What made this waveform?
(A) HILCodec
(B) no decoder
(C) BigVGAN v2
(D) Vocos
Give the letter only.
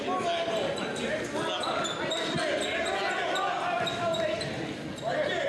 B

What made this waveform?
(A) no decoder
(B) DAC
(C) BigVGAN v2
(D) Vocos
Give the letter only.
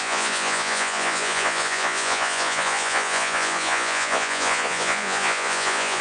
D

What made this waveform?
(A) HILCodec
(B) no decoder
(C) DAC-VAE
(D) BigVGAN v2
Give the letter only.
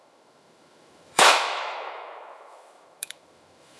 C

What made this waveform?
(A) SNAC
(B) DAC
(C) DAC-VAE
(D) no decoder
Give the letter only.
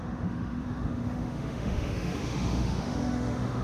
C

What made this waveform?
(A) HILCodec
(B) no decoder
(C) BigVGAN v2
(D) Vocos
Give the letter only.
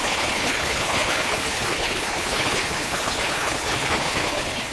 A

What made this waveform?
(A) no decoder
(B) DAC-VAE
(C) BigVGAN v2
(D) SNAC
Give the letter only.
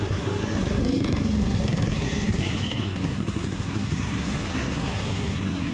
D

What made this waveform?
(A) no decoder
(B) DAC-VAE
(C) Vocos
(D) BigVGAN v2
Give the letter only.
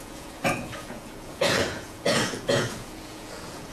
C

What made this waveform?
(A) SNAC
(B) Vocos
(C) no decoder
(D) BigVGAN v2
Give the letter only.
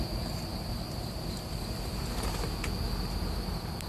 C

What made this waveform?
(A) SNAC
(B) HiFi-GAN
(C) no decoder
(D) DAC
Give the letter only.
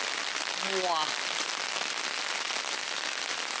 C